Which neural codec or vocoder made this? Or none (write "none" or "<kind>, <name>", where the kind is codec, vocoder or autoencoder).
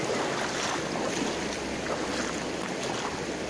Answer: none